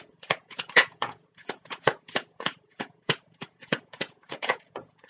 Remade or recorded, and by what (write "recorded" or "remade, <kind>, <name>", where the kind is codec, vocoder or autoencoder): remade, vocoder, Vocos